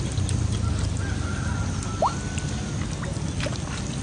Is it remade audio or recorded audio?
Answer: recorded